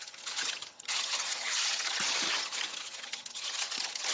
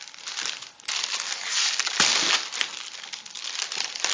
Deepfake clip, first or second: first